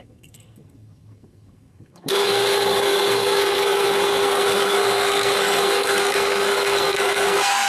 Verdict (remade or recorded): remade